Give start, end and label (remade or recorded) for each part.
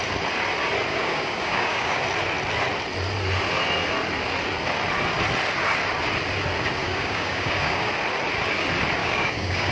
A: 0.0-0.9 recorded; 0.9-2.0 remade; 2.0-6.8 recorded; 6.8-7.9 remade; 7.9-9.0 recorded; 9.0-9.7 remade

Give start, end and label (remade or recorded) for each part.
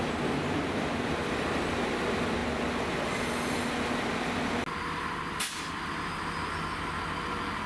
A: 0.0-7.7 recorded